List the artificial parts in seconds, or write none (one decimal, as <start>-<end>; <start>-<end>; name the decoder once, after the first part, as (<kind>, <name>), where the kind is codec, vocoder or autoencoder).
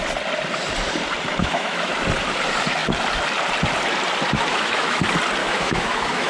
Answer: 1.4-1.9 (autoencoder, DAC-VAE); 4.5-5.0; 5.4-6.3